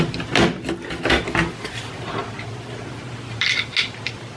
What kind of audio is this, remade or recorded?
recorded